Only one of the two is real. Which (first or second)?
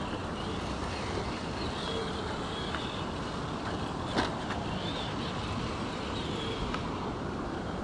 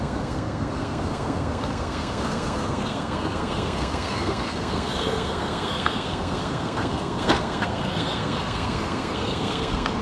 first